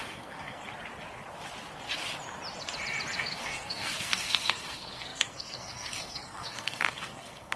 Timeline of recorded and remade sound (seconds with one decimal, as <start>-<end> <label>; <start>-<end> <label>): 0.0-0.6 remade; 0.6-3.2 recorded; 3.2-7.6 remade